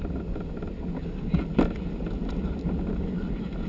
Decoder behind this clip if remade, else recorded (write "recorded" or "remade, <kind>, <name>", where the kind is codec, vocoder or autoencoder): recorded